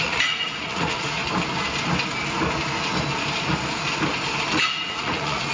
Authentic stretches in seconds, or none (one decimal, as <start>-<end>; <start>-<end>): 1.2-4.5